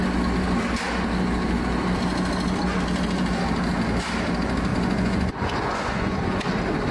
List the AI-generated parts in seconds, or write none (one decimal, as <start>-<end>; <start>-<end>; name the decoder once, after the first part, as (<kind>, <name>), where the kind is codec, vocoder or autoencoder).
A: 4.7-6.5 (vocoder, Vocos)